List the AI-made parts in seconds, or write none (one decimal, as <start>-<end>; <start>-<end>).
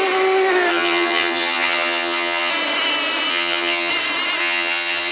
0.7-2.5; 3.3-3.9; 4.4-5.1